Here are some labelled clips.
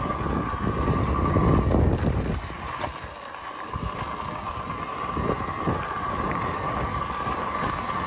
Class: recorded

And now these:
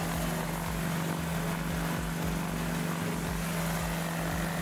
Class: recorded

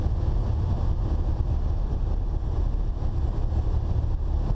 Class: recorded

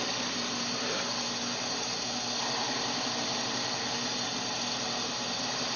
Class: recorded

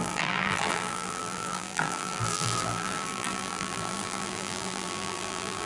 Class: remade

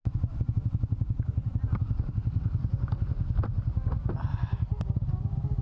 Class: remade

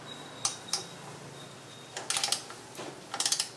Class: recorded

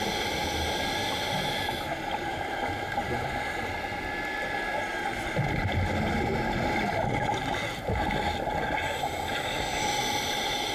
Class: recorded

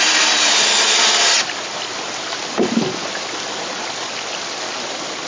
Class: recorded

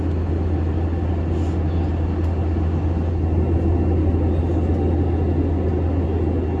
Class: recorded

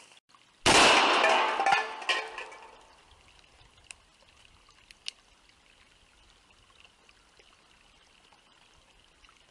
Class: recorded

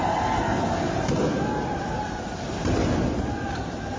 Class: remade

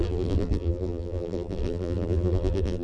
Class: remade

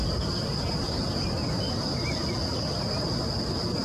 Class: recorded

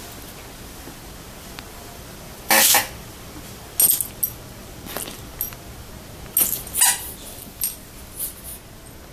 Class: recorded